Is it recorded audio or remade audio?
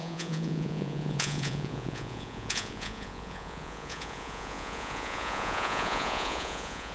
remade